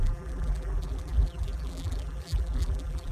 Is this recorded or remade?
remade